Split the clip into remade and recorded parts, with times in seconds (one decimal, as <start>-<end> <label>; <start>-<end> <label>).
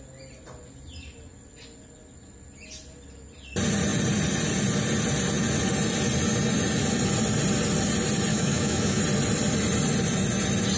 0.0-8.3 recorded; 8.3-9.0 remade; 9.0-10.8 recorded